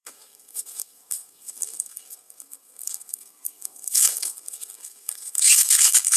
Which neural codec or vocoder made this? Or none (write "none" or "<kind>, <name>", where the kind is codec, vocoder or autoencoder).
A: codec, SNAC